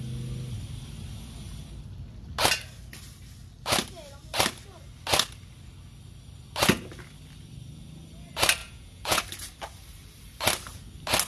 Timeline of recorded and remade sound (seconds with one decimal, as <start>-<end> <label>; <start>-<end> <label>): 0.0-8.6 recorded; 8.6-9.2 remade; 9.2-11.3 recorded